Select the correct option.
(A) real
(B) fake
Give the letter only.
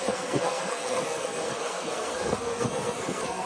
B